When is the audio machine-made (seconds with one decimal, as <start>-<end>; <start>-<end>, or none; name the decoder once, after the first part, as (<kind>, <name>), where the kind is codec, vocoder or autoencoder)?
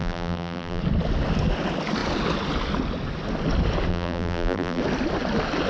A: 0.0-0.8 (vocoder, BigVGAN v2); 3.9-4.8